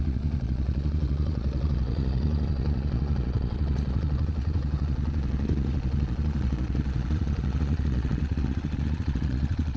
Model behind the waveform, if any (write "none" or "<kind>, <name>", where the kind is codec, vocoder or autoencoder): vocoder, Vocos